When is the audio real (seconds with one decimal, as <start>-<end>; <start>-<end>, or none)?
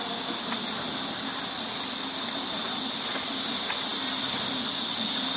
none